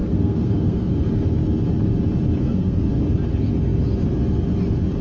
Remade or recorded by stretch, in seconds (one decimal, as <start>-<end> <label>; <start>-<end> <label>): 0.0-0.9 remade; 0.9-2.4 recorded; 2.4-2.9 remade; 2.9-5.0 recorded